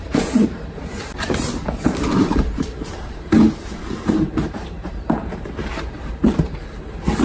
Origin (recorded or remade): remade